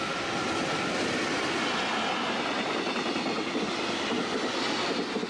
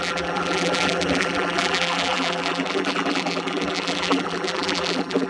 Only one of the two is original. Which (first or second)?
first